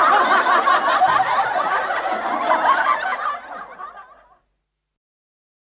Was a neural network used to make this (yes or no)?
no